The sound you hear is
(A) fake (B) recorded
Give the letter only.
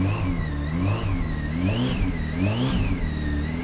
B